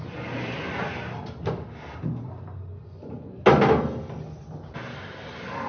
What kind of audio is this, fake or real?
real